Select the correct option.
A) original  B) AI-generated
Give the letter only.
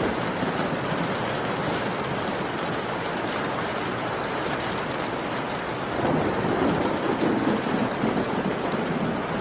A